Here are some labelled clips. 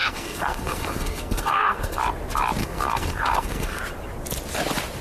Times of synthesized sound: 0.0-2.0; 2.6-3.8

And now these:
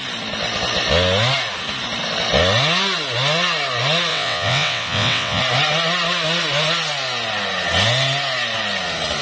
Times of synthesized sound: 4.1-5.4

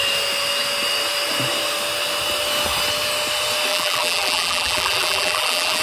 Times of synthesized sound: 3.7-5.8

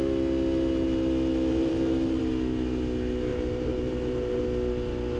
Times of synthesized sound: 1.5-2.2; 3.3-4.4

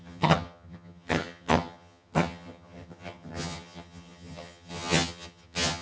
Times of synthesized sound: 0.0-5.8

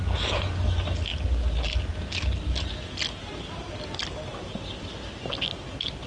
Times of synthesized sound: none

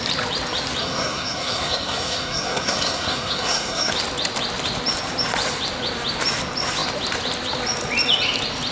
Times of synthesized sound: 0.8-3.9

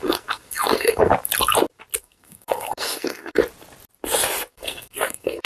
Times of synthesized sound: 0.0-1.1; 2.0-3.4; 4.5-5.5